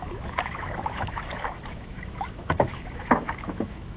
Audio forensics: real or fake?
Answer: fake